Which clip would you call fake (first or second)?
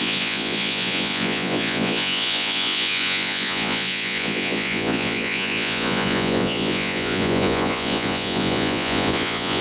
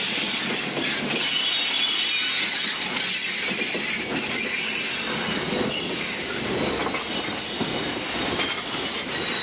first